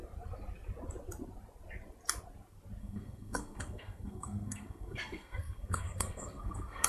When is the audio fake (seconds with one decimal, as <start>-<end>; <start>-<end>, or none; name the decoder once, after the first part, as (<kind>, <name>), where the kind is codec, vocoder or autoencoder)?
2.8-6.9 (codec, SNAC)